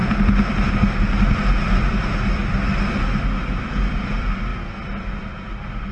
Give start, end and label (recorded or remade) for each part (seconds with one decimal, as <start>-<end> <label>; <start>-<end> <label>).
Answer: 0.0-1.9 recorded; 1.9-2.4 remade; 2.4-3.2 recorded; 3.2-4.5 remade; 4.5-5.2 recorded; 5.2-5.9 remade